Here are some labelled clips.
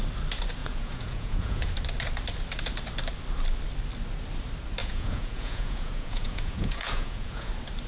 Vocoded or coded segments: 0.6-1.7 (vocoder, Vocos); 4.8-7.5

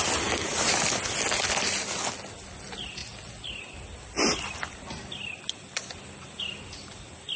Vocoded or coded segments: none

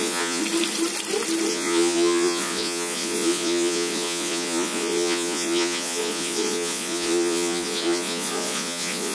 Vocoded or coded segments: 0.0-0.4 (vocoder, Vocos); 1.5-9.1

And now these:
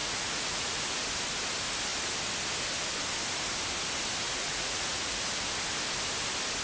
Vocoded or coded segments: 0.0-1.0 (vocoder, Vocos); 4.4-5.4

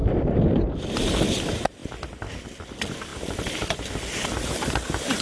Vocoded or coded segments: none

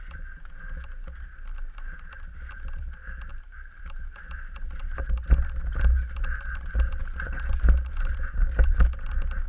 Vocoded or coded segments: none

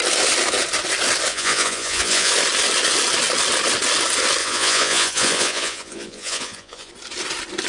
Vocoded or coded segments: 1.3-2.3 (vocoder, Vocos); 4.4-6.9

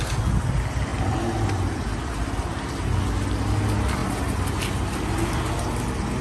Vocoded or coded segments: none